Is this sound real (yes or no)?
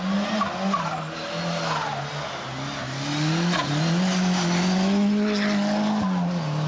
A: yes